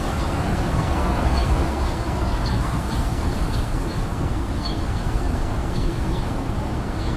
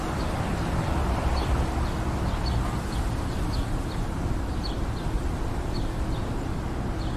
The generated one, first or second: first